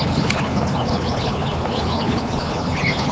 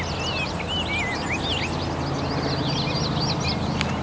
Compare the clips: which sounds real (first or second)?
second